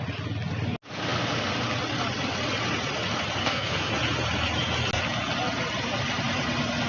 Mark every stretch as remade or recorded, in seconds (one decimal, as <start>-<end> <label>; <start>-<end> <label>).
0.0-3.4 recorded; 3.4-3.9 remade; 3.9-6.9 recorded